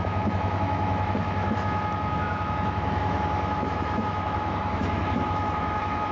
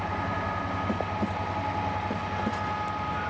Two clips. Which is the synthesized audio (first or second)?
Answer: first